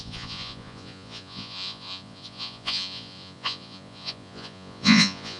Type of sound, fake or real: fake